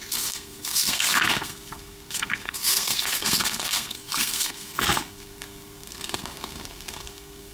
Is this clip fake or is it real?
fake